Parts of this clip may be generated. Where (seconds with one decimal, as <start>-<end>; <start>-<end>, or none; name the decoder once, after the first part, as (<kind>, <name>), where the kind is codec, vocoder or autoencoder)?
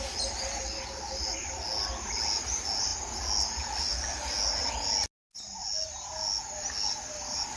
none